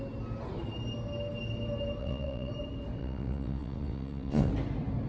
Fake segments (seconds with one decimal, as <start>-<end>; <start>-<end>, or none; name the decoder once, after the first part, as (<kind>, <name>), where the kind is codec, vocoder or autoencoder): 2.0-2.5 (vocoder, WaveNeXt); 3.0-4.5